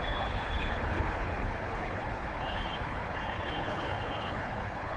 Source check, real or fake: fake